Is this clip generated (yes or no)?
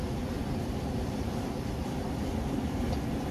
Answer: yes